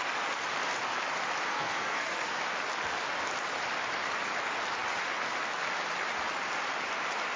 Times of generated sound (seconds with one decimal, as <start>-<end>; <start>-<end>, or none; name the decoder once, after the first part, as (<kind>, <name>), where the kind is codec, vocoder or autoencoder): 1.5-2.4 (codec, SNAC)